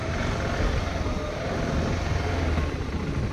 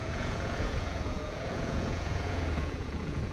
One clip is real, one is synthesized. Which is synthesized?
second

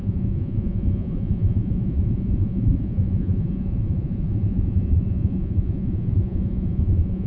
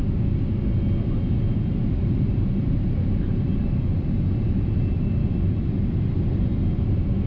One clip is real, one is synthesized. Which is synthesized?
first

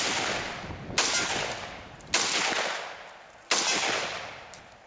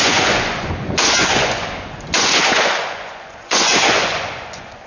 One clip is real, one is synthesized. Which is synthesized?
second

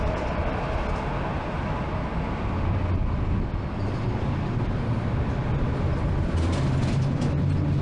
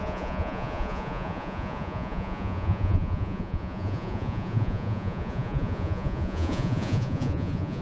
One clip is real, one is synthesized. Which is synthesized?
second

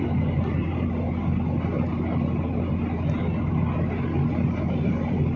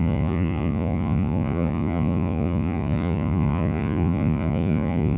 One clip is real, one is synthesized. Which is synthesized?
second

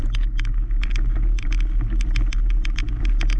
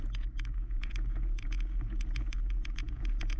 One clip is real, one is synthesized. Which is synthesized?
second